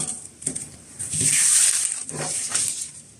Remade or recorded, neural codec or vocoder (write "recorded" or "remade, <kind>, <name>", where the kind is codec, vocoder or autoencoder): remade, vocoder, BigVGAN v2